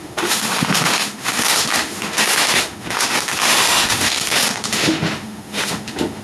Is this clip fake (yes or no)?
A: yes